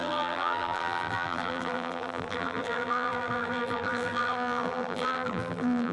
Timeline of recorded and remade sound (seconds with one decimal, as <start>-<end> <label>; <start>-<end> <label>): 0.0-5.9 remade